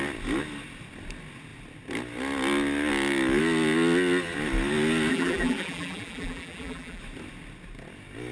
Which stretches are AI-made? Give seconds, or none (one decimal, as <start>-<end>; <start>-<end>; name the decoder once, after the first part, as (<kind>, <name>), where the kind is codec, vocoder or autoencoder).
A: 5.1-7.0 (vocoder, BigVGAN v2)